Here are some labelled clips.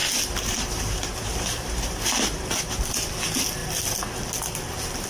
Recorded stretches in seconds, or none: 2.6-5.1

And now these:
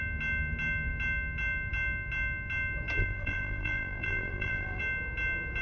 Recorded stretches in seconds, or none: 0.0-3.0; 4.8-5.6

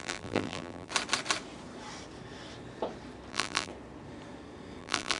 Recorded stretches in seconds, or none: 0.9-3.3; 3.7-4.8

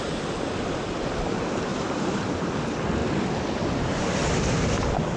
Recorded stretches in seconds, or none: 0.0-1.7; 2.5-5.2